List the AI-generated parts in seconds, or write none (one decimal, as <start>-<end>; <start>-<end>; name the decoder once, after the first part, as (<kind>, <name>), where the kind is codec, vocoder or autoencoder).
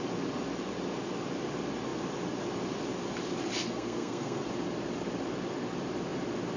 3.6-4.5 (codec, SNAC)